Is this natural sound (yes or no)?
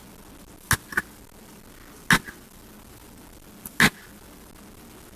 yes